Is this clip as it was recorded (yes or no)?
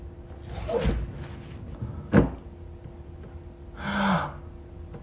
yes